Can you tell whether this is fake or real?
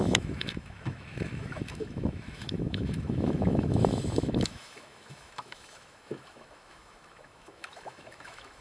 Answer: fake